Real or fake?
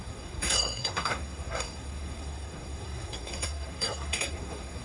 fake